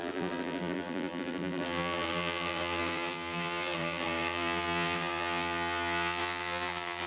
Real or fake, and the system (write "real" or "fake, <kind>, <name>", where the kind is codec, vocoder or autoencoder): fake, vocoder, BigVGAN v2